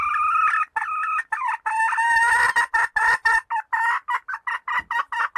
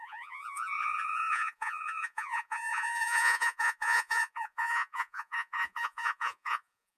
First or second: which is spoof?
second